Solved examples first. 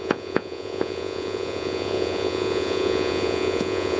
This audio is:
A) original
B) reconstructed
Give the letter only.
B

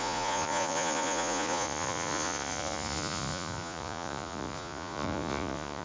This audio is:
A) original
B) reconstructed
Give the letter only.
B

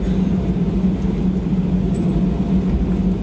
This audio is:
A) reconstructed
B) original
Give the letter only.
B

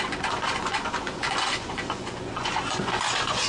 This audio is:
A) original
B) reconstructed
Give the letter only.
B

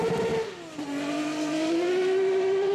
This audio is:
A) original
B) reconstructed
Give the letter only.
A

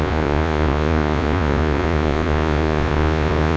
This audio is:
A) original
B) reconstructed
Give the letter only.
B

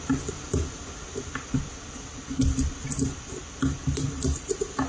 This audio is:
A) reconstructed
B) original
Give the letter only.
B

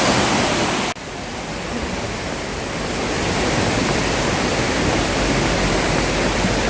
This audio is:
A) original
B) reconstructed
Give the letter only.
A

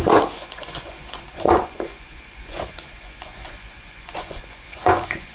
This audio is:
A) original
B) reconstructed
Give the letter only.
B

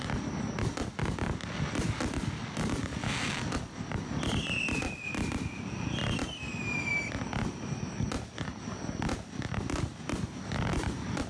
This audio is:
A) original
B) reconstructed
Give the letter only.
A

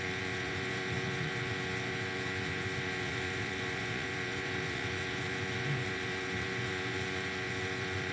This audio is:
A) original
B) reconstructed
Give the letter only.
B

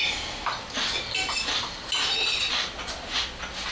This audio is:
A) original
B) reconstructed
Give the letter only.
A